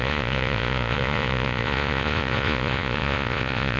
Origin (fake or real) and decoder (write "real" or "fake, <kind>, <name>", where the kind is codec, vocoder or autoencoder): fake, vocoder, Vocos